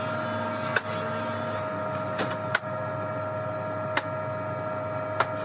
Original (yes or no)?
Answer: yes